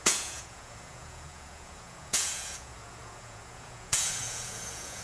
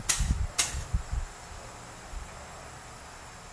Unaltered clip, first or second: second